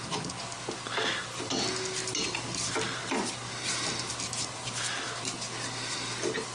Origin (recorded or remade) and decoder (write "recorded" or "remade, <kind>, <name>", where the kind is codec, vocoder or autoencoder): recorded